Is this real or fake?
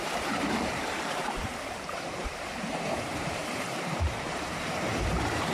fake